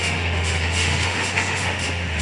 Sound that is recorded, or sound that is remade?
remade